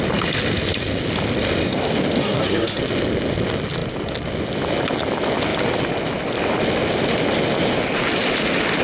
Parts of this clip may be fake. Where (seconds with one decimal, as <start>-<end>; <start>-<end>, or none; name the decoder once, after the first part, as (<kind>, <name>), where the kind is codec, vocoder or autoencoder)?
2.2-2.8 (codec, SNAC)